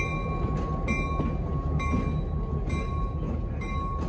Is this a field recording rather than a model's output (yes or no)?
yes